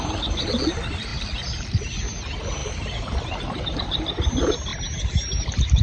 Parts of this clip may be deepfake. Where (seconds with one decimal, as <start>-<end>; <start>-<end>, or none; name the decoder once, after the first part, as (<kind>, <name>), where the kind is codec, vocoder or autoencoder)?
1.1-2.0 (vocoder, BigVGAN v2); 2.6-3.8; 4.7-5.8